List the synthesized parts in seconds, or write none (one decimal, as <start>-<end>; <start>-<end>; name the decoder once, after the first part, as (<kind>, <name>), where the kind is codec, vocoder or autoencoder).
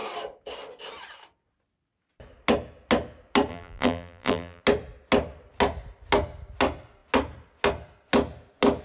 3.5-4.6 (vocoder, BigVGAN v2)